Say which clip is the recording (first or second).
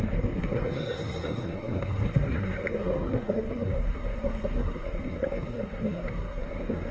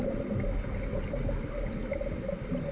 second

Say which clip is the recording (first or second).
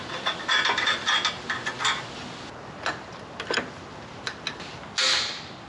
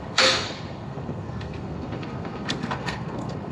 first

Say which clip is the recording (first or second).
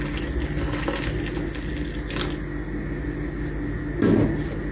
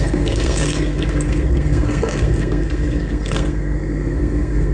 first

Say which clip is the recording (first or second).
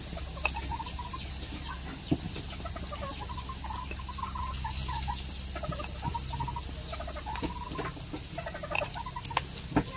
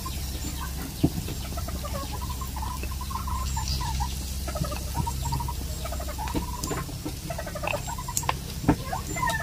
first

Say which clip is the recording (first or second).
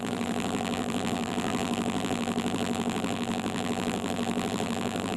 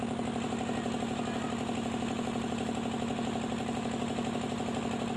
second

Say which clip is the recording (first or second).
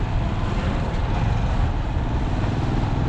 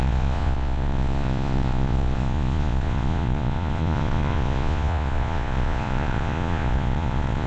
first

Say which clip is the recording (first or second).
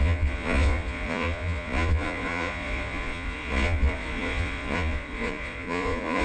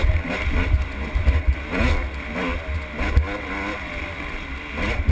second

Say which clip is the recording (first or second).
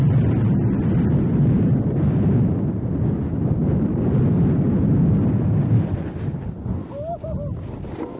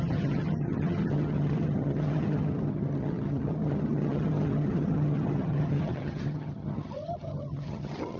first